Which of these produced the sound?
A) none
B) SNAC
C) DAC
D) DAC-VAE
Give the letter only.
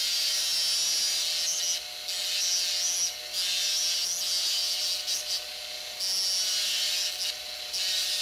A